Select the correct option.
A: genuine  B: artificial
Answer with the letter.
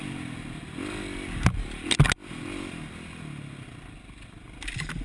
A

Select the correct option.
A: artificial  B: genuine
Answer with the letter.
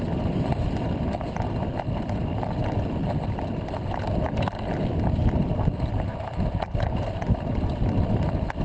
A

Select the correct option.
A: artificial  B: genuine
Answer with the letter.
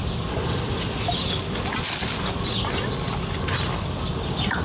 B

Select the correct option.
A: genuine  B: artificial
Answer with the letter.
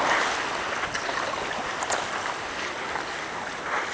A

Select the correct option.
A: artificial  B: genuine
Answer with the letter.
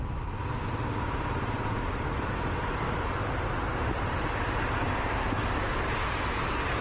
B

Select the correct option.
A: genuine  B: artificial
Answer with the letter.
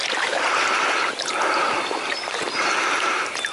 A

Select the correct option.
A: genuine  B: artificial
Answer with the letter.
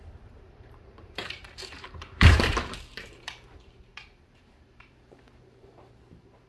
B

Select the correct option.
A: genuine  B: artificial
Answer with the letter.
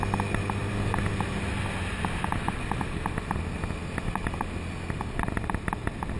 A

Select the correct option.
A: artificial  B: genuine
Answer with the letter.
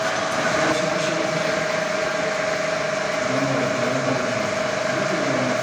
B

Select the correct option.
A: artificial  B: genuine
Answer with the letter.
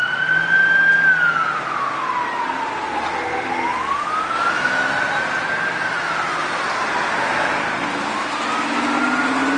B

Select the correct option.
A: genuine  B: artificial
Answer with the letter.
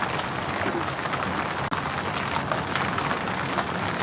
A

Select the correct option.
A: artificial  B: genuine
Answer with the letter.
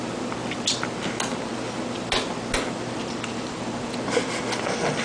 B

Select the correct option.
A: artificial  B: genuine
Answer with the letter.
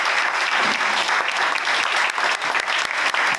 B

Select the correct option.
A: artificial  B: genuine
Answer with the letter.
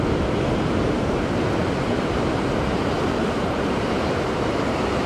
A